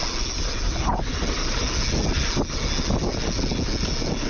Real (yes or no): yes